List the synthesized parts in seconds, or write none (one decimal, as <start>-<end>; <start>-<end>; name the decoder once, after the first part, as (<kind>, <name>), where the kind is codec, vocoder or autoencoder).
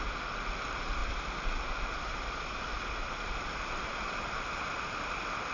1.0-3.9 (vocoder, BigVGAN v2)